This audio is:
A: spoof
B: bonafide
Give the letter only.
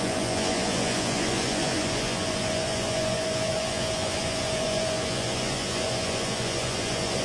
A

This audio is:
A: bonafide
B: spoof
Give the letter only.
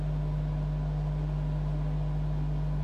A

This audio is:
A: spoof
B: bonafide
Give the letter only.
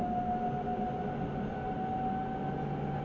B